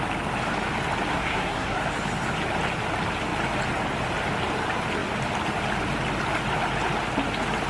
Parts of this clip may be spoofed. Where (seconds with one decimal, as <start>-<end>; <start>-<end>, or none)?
1.1-1.8